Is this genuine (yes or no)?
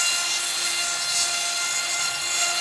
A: yes